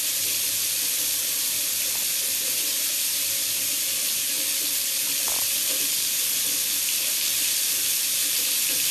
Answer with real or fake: fake